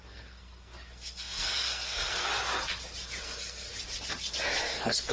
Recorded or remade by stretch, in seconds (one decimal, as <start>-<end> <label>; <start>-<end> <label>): 0.0-2.3 remade; 2.3-3.2 recorded; 3.2-3.7 remade; 3.7-4.6 recorded; 4.6-5.1 remade

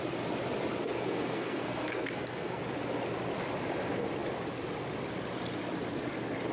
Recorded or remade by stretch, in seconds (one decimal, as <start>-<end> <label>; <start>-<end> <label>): 0.0-0.8 recorded; 0.8-2.6 remade; 2.6-6.5 recorded